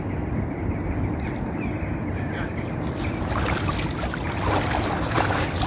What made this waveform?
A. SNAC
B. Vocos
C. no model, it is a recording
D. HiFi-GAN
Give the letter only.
C